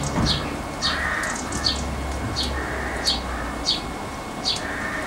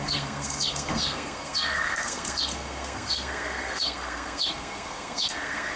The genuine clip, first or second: first